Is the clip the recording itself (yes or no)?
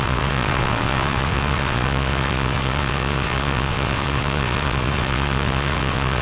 no